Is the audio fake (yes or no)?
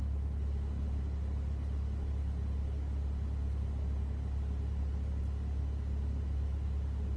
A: no